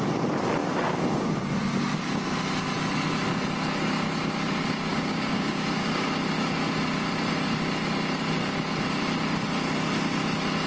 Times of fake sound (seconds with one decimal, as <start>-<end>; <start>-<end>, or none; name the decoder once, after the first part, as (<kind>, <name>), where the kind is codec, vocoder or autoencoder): 0.6-1.4 (codec, DAC); 4.9-6.1